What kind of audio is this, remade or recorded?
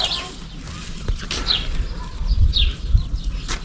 recorded